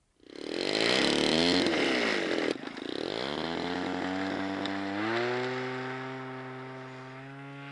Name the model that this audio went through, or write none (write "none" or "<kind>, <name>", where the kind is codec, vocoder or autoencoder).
none